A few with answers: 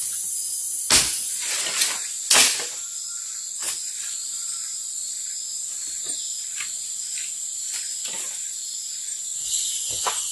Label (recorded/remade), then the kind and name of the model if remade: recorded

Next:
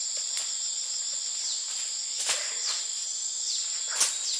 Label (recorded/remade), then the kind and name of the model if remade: recorded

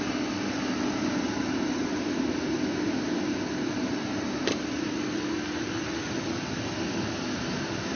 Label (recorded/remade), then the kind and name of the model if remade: recorded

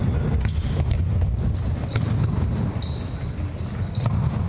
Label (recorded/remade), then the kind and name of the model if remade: recorded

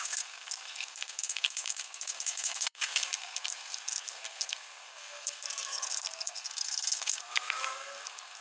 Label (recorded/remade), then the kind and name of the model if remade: remade, codec, SNAC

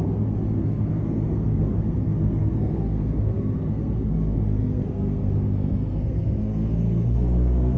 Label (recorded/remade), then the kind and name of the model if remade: remade, codec, SNAC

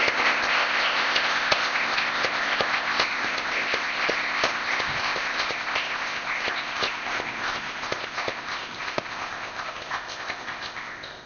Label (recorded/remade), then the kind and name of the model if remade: remade, codec, ZipCodec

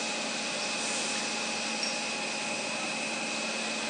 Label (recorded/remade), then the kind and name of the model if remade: recorded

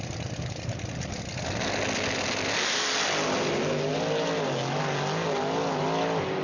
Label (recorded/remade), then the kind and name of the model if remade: recorded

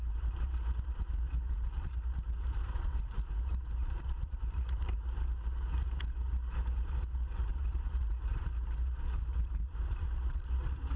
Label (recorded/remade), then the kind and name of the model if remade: remade, vocoder, BigVGAN v2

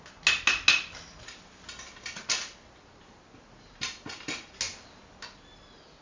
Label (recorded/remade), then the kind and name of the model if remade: recorded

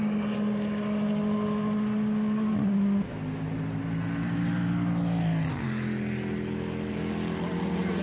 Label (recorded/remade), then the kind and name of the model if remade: recorded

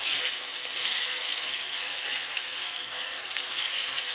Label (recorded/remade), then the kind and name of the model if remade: remade, codec, SNAC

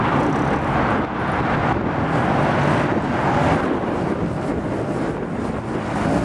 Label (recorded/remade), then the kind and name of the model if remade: recorded